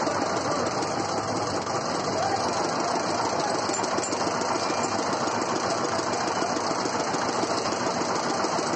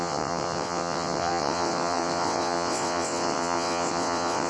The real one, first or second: first